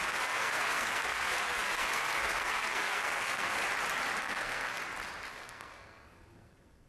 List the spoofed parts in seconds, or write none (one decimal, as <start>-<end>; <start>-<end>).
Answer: 0.0-3.6; 4.2-4.8; 5.3-6.9